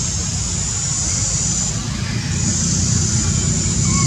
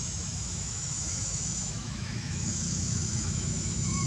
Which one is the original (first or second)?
first